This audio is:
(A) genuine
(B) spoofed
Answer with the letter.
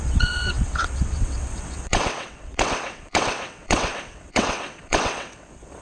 B